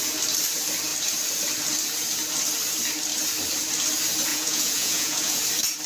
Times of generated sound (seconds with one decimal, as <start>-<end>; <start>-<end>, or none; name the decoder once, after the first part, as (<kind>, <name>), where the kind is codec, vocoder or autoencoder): 4.3-5.4 (vocoder, Vocos)